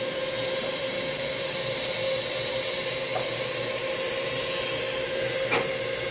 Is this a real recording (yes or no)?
no